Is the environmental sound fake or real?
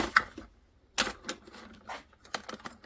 real